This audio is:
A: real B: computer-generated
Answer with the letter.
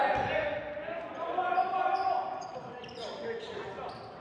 A